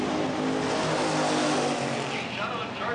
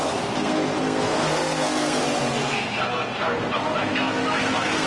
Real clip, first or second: first